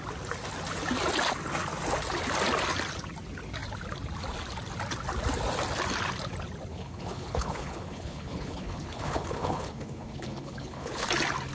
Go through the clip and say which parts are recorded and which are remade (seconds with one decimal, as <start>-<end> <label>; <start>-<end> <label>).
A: 0.0-6.7 recorded; 6.7-11.1 remade; 11.1-11.5 recorded